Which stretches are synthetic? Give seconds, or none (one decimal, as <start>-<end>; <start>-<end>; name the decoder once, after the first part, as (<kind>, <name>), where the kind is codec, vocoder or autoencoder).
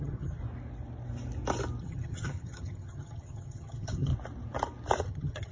0.0-0.4 (vocoder, HiFi-GAN); 1.8-4.1; 5.0-5.5